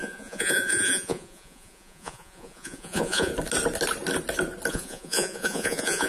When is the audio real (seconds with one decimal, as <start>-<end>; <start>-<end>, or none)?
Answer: 3.3-4.7